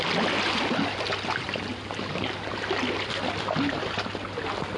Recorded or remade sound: recorded